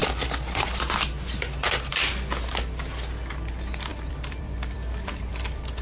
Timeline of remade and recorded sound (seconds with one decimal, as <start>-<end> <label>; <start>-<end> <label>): 0.0-3.5 recorded; 3.5-5.8 remade